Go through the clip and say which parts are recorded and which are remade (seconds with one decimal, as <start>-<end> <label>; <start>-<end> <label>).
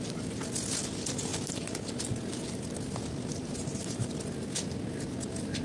0.0-1.3 recorded; 1.3-2.0 remade; 2.0-3.3 recorded; 3.3-4.1 remade; 4.1-5.6 recorded